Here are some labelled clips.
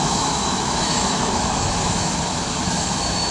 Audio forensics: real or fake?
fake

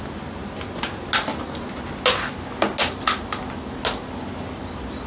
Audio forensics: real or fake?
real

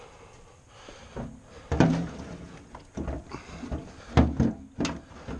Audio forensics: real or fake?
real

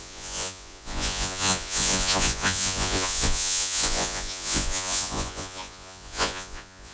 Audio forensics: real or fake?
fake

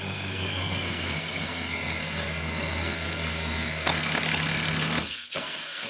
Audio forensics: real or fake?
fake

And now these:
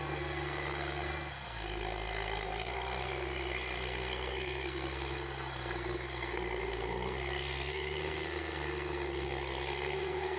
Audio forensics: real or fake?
fake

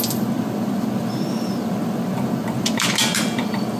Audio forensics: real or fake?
fake